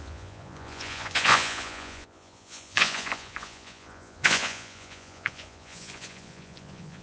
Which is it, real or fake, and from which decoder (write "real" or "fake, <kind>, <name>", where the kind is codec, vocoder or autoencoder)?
fake, vocoder, Vocos